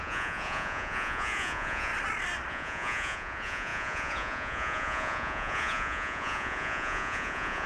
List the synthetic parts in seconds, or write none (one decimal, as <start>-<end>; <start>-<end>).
0.0-1.9; 2.5-7.7